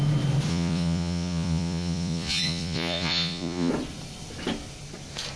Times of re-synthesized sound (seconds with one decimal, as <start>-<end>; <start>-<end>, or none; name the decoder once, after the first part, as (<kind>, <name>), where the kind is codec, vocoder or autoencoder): 0.5-3.7 (vocoder, Vocos)